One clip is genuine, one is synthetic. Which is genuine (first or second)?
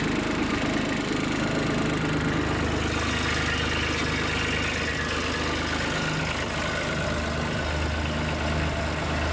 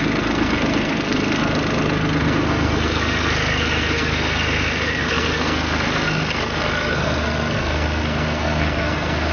first